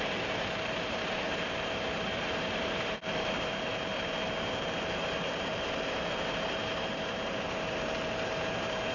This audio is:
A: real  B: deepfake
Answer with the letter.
B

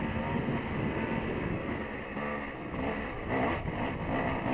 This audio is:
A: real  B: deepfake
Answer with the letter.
A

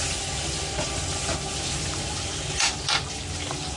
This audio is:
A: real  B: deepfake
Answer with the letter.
A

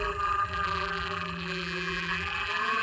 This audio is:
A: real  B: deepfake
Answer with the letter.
B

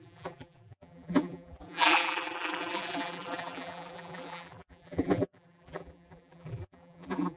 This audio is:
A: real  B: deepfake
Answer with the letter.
B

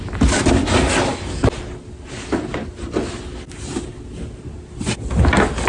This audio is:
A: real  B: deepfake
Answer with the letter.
A